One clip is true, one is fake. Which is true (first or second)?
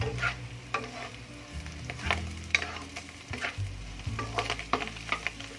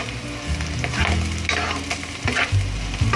second